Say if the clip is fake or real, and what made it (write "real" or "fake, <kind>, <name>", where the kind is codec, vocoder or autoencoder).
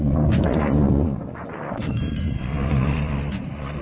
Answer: fake, vocoder, Vocos